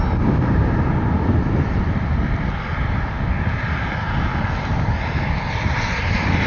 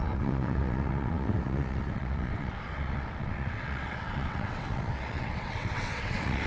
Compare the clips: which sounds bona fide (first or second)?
first